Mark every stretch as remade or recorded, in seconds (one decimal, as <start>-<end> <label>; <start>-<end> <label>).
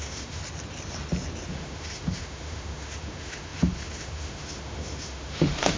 0.0-0.4 remade; 0.4-1.5 recorded; 1.5-5.8 remade